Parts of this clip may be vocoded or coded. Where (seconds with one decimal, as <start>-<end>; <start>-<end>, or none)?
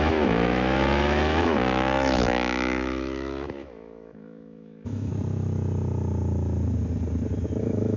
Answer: 0.0-5.1; 7.6-8.0